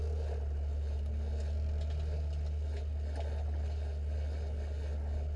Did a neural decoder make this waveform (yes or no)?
no